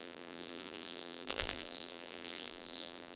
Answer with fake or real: fake